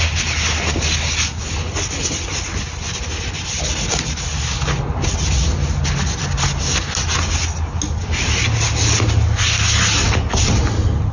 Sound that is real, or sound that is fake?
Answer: real